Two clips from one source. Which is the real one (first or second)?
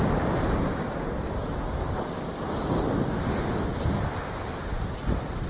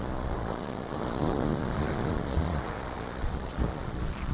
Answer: first